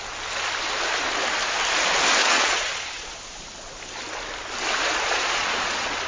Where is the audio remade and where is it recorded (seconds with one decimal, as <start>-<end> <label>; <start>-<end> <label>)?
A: 0.0-2.2 recorded; 2.2-3.2 remade; 3.2-4.8 recorded; 4.8-6.1 remade